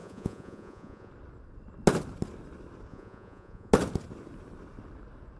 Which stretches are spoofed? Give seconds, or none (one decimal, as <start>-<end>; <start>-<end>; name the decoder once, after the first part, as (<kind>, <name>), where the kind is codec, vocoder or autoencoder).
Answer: 0.0-1.1 (vocoder, Vocos); 2.9-3.7